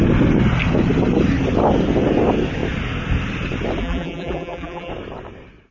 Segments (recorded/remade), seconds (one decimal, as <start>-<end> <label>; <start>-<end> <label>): 0.0-3.8 recorded; 3.8-4.9 remade; 4.9-5.7 recorded